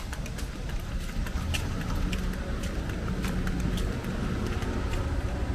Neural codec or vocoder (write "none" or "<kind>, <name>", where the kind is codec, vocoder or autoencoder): none